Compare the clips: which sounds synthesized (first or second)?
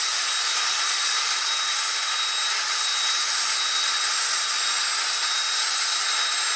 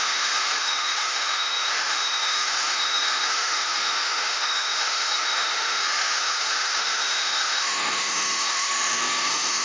second